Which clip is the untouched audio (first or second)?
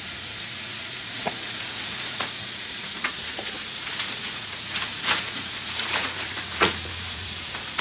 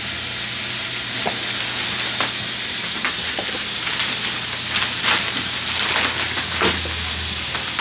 second